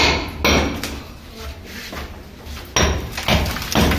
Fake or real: real